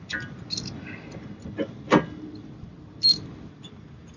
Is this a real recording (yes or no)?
yes